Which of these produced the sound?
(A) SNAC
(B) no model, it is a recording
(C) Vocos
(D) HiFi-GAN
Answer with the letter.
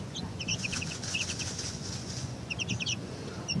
C